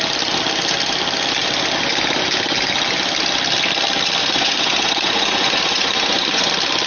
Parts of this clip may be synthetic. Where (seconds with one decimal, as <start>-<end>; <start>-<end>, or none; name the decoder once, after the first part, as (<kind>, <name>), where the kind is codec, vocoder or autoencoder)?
4.2-6.5 (vocoder, Vocos)